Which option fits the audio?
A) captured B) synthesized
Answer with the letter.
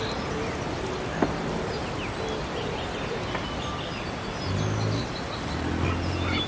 A